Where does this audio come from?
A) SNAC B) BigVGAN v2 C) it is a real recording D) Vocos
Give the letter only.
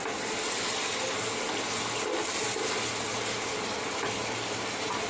C